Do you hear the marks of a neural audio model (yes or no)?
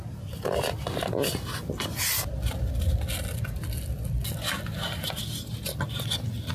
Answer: no